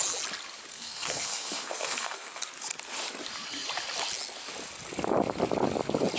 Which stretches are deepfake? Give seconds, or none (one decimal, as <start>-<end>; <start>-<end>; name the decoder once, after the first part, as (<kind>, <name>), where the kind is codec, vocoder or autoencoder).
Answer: 0.7-2.4 (codec, SNAC)